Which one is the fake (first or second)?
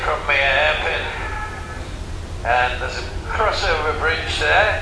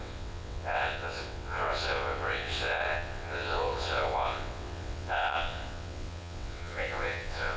second